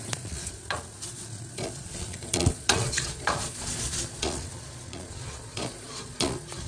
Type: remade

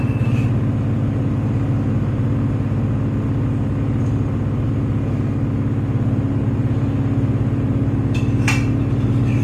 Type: recorded